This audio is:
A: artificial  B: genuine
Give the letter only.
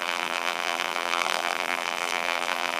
A